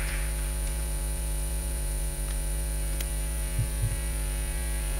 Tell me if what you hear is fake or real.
fake